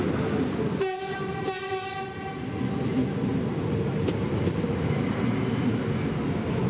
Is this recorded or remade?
recorded